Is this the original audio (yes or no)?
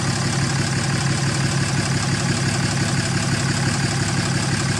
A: yes